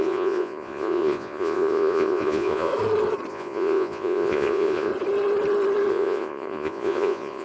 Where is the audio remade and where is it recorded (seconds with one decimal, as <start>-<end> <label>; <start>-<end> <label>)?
0.0-2.7 remade; 2.7-3.3 recorded; 3.3-4.9 remade; 4.9-5.9 recorded; 5.9-7.4 remade